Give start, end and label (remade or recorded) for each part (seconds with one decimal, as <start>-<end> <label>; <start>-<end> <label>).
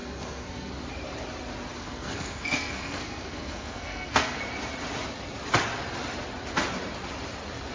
0.0-0.7 remade; 0.7-1.8 recorded; 1.8-4.4 remade; 4.4-7.7 recorded